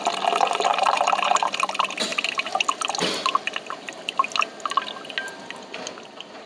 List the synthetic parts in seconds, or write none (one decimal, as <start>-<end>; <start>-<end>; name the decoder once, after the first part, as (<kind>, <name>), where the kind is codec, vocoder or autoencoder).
0.7-1.4 (vocoder, BigVGAN v2)